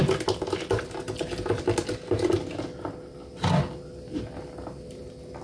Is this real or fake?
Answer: real